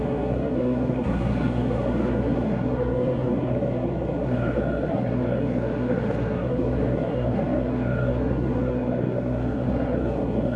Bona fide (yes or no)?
no